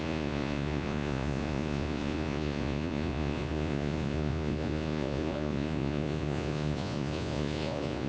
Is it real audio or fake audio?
fake